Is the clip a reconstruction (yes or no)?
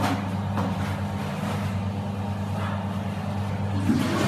no